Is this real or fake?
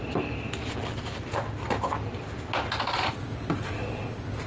real